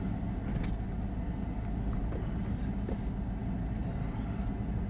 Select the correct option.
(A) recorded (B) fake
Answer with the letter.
A